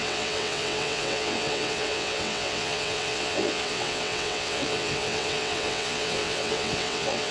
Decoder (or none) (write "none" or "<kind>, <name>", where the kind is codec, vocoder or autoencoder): vocoder, WaveNeXt